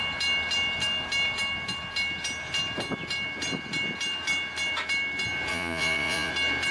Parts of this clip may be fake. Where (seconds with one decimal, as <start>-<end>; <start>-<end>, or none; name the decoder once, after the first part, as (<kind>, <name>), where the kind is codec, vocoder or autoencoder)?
5.5-6.3 (vocoder, Vocos)